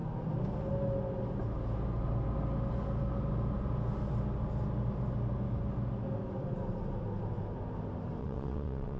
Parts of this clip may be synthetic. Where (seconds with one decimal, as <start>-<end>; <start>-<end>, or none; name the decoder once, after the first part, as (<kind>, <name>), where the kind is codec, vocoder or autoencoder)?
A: 8.2-9.0 (vocoder, WaveNeXt)